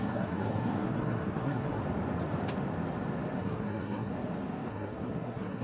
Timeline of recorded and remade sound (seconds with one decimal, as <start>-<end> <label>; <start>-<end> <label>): 0.0-1.8 remade; 1.8-3.4 recorded; 3.4-4.1 remade; 4.1-4.7 recorded; 4.7-5.6 remade